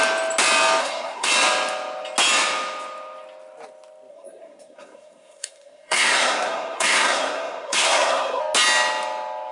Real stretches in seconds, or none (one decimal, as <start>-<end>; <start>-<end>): 0.0-0.8; 1.3-4.1; 8.4-9.5